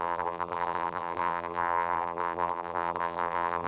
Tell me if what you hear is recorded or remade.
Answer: remade